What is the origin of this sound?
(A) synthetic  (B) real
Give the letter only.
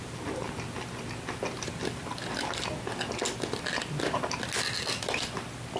B